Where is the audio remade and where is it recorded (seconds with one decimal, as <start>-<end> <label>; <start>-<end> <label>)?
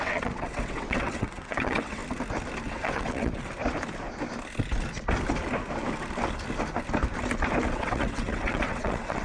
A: 0.0-2.0 remade; 2.0-2.7 recorded; 2.7-3.4 remade; 3.4-7.7 recorded; 7.7-9.2 remade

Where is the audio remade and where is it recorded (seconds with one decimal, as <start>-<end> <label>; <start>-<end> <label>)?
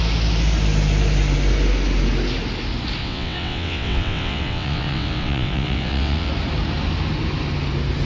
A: 0.0-3.0 recorded; 3.0-6.3 remade; 6.3-8.1 recorded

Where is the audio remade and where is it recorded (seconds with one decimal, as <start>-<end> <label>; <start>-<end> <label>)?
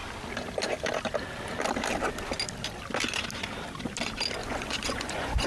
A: 0.0-4.4 recorded; 4.4-5.5 remade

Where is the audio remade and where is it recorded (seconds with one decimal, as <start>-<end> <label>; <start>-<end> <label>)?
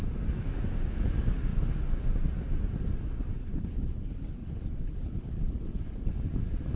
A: 0.0-3.4 recorded; 3.4-6.1 remade; 6.1-6.8 recorded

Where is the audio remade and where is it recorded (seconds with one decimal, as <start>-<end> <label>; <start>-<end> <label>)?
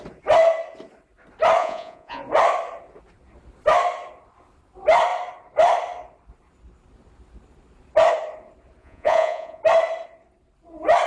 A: 0.0-1.6 recorded; 1.6-2.2 remade; 2.2-8.8 recorded; 8.8-9.6 remade; 9.6-11.1 recorded